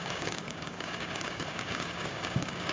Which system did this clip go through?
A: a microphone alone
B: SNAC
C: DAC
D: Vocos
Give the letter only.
C